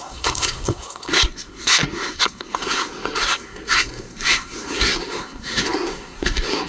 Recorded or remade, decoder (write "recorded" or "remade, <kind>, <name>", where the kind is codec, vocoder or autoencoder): remade, codec, SNAC